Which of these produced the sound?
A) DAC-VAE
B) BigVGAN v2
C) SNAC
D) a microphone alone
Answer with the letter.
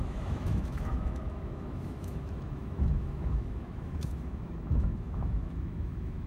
A